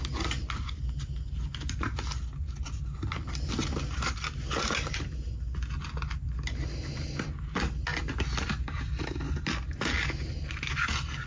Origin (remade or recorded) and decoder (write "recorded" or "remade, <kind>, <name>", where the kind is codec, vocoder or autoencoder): recorded